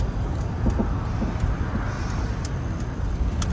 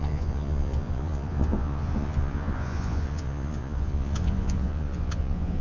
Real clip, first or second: first